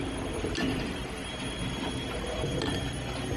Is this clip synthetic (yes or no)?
no